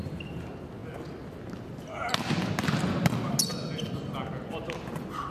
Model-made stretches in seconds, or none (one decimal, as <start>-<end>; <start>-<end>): none